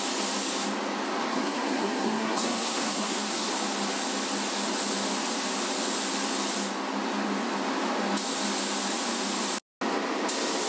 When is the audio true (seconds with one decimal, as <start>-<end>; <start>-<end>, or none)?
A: 0.0-1.3; 3.5-10.7